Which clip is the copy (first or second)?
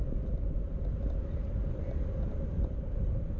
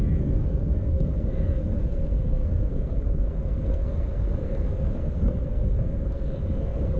second